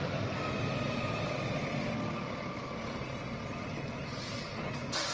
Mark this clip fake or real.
real